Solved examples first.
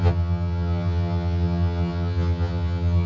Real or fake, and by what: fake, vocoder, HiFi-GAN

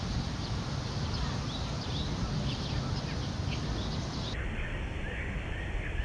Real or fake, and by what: real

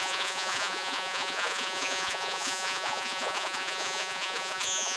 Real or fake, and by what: fake, vocoder, Vocos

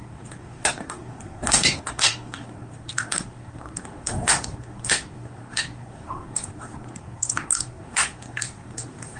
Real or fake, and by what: fake, codec, SNAC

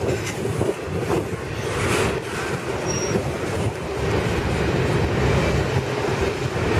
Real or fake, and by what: real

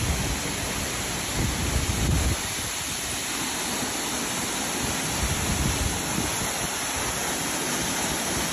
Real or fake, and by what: real